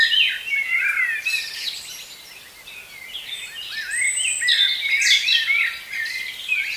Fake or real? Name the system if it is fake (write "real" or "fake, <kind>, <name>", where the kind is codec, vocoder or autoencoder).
real